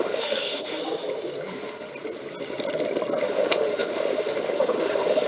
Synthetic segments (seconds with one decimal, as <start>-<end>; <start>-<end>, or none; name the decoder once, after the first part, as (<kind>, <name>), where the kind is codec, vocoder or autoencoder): 0.0-0.8 (autoencoder, DAC-VAE); 1.5-1.9; 3.2-5.3